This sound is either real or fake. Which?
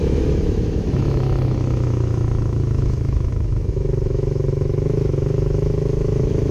fake